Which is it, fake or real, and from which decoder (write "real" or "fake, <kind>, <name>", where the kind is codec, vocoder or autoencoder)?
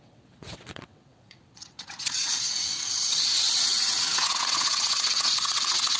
fake, vocoder, WaveNeXt